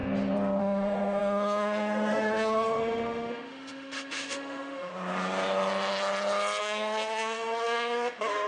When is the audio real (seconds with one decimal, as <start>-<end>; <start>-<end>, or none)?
0.0-0.6; 4.9-6.6